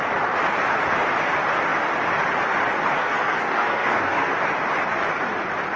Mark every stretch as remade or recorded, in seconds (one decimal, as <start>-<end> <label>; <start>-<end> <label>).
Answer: 0.0-3.0 recorded; 3.0-4.3 remade; 4.3-5.8 recorded